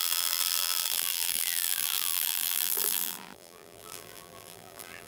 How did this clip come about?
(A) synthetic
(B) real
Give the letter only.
A